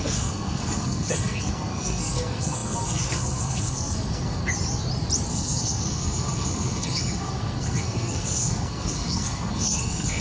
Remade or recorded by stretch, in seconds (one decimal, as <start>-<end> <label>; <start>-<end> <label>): 0.0-4.4 remade; 4.4-5.3 recorded; 5.3-10.2 remade